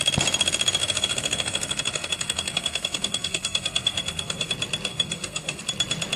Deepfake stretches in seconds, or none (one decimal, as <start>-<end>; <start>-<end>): 0.8-4.5; 4.9-5.6